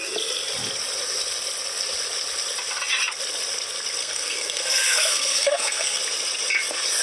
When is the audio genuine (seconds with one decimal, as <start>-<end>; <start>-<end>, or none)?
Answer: 0.0-4.0; 6.0-7.0